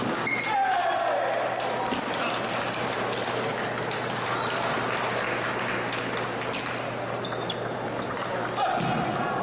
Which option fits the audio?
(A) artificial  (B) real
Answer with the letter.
B